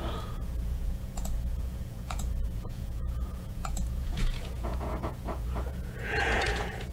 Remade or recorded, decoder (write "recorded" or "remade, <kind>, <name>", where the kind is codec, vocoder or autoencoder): remade, vocoder, Vocos